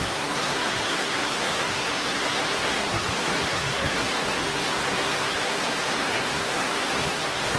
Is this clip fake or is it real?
fake